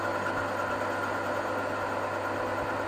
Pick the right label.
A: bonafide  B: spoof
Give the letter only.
A